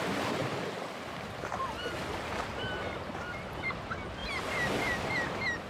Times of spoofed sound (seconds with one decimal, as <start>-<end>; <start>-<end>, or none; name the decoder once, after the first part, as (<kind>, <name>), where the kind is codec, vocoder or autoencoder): 0.4-3.8 (vocoder, BigVGAN v2)